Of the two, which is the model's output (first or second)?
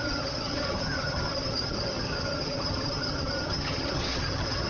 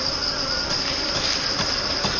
first